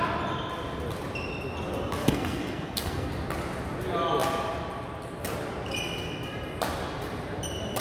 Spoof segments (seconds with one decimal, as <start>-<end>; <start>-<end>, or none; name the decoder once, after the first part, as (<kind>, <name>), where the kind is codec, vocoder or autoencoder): 2.0-3.1 (codec, SNAC)